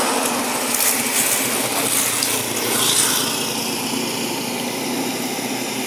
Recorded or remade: recorded